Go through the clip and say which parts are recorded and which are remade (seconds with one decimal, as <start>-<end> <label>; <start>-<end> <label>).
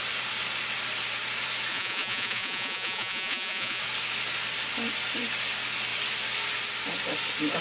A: 0.0-1.7 recorded; 1.7-3.8 remade; 3.8-7.6 recorded